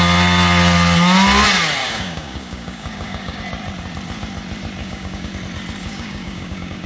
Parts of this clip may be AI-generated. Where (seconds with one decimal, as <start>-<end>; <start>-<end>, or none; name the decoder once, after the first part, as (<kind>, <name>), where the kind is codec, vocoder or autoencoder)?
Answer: 1.8-3.4 (codec, DAC); 4.8-5.3; 5.8-6.9